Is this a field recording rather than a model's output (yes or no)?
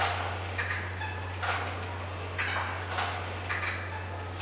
yes